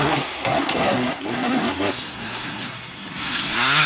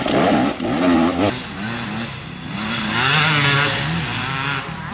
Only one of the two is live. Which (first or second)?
second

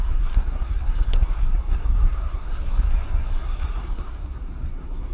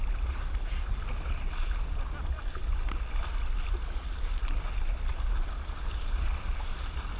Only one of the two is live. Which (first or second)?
second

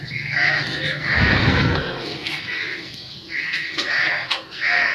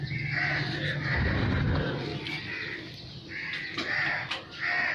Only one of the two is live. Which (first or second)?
second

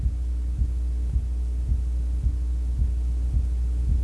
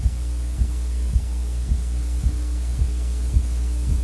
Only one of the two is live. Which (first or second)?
first